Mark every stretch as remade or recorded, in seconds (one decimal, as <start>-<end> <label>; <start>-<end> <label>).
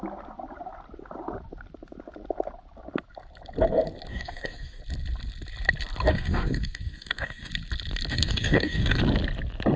0.0-4.1 recorded; 4.1-4.8 remade; 4.8-6.1 recorded; 6.1-7.5 remade; 7.5-8.1 recorded; 8.1-9.0 remade; 9.0-9.8 recorded